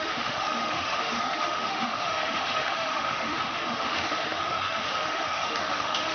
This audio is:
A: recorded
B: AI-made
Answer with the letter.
B